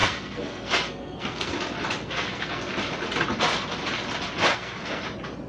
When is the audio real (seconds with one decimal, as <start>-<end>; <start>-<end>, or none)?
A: 1.5-2.0; 2.7-4.5; 5.0-5.5